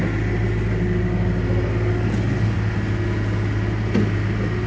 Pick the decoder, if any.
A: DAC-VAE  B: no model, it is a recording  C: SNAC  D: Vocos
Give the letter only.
B